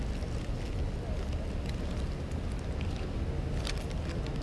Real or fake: real